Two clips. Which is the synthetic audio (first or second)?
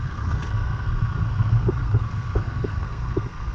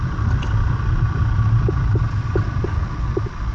first